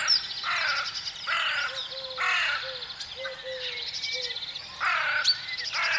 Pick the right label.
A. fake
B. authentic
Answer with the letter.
B